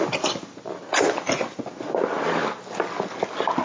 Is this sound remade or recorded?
recorded